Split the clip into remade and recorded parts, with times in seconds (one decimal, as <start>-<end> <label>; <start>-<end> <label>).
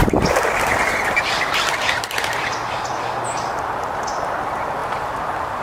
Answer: 0.0-4.8 recorded; 4.8-5.6 remade